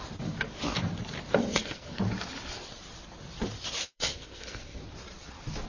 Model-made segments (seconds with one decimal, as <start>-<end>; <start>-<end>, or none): 1.4-2.0; 3.8-4.8